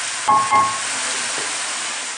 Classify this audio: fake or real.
real